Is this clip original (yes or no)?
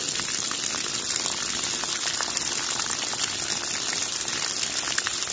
yes